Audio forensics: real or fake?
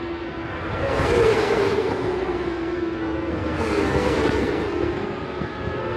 fake